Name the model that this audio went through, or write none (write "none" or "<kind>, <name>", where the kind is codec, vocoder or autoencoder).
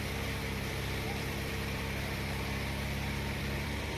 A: vocoder, BigVGAN v2